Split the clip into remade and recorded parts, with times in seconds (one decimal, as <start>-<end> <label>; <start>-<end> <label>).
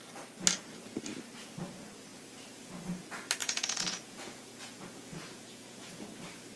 0.0-3.4 recorded; 3.4-6.0 remade; 6.0-6.6 recorded